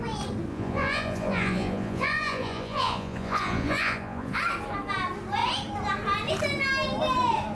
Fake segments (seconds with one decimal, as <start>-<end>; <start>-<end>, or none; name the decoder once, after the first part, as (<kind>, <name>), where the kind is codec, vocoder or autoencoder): 0.5-4.4 (vocoder, Vocos)